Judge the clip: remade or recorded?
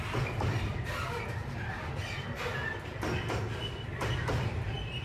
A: recorded